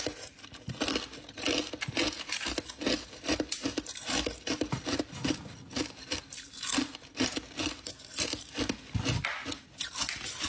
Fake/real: real